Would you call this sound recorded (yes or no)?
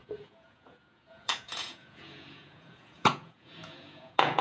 no